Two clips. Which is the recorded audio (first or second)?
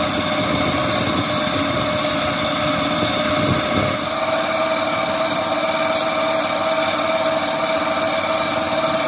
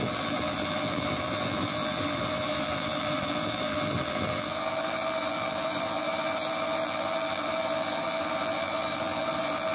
first